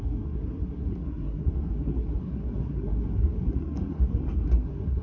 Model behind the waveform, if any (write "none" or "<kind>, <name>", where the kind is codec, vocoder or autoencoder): codec, SNAC